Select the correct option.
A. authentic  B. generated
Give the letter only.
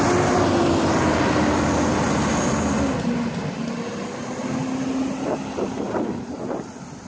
A